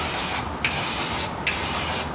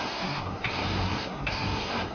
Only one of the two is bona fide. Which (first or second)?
first